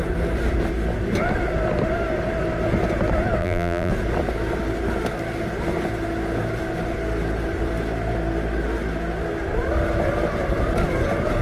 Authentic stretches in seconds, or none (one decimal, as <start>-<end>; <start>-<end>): 0.0-3.4; 3.9-11.4